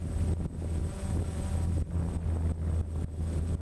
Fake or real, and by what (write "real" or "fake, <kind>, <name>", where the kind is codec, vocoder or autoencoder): real